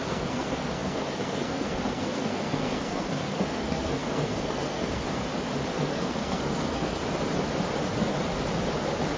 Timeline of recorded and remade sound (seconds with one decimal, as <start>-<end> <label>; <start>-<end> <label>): 0.0-5.2 remade; 5.2-5.7 recorded; 5.7-7.0 remade; 7.0-9.2 recorded